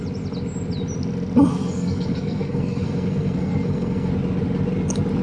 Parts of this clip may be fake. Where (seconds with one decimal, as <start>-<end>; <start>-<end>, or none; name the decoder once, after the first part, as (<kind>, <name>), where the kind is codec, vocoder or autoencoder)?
1.5-4.1 (codec, SNAC)